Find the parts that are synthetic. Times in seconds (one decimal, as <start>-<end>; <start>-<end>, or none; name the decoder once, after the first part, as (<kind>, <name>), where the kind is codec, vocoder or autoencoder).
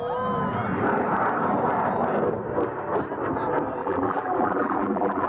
3.8-5.3 (vocoder, BigVGAN v2)